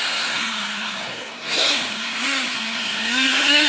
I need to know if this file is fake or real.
fake